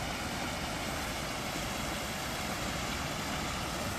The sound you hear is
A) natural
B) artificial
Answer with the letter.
A